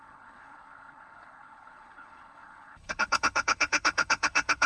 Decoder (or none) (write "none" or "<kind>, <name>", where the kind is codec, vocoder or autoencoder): codec, HILCodec